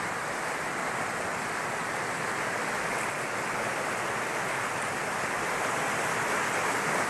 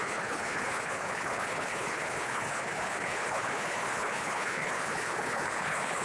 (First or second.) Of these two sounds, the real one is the first